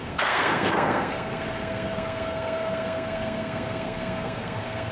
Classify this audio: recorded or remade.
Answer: remade